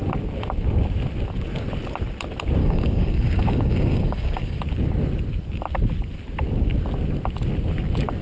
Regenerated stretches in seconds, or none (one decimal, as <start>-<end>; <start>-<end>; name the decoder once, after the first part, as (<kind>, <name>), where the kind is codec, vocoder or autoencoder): 2.6-4.6 (codec, DAC)